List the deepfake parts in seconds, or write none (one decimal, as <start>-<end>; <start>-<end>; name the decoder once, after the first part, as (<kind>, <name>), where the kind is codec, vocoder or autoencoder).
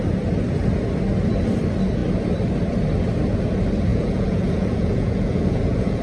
3.9-6.0 (vocoder, Vocos)